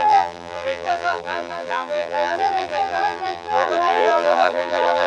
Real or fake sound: fake